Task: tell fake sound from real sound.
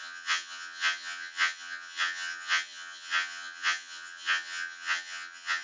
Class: fake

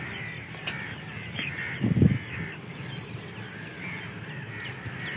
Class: real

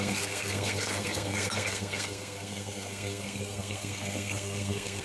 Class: fake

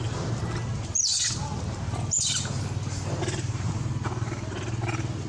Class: real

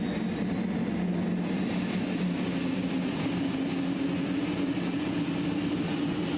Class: real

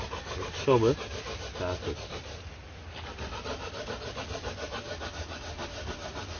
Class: real